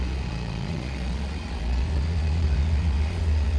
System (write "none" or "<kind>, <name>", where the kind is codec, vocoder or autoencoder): vocoder, Vocos